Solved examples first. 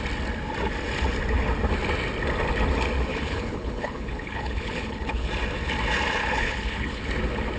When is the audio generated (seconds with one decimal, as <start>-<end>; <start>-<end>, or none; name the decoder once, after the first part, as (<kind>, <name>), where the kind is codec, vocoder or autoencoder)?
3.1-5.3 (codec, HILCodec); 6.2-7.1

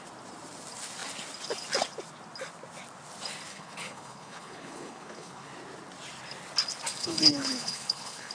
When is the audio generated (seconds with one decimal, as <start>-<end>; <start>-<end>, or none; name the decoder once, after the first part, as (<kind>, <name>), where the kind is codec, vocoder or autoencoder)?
3.5-5.5 (codec, HILCodec); 7.0-8.3

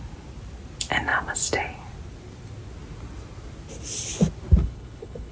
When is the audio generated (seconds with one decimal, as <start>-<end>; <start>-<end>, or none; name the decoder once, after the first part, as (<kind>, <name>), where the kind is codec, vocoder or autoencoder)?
4.6-5.3 (codec, HILCodec)

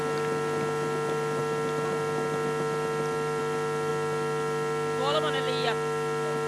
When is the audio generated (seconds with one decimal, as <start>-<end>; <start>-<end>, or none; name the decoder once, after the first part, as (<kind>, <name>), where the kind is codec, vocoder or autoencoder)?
none

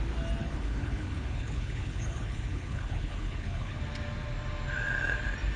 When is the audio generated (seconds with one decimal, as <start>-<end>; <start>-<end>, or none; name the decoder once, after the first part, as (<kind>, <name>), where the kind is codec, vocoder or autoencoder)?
0.4-3.8 (codec, HILCodec)

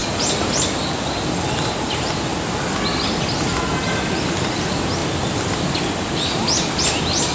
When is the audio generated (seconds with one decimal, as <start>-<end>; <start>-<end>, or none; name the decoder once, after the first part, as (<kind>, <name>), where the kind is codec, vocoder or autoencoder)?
none